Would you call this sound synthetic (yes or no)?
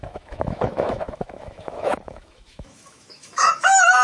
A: yes